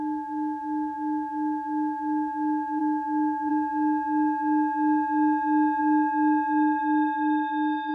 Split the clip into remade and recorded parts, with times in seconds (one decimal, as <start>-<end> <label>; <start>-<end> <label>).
0.0-2.8 recorded; 2.8-3.5 remade; 3.5-5.8 recorded; 5.8-7.9 remade